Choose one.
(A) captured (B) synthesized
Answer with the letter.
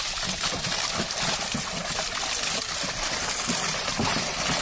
A